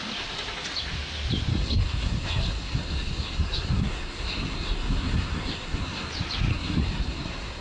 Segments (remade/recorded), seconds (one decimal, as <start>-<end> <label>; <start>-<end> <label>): 0.0-1.5 recorded; 1.5-6.1 remade; 6.1-6.5 recorded; 6.5-7.6 remade